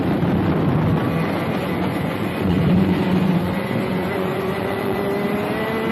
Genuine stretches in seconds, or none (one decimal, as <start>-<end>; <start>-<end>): 0.0-1.6; 5.0-5.9